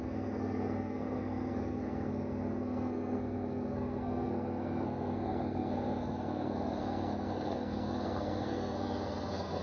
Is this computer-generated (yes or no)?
yes